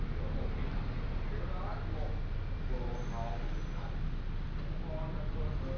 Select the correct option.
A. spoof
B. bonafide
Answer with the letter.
B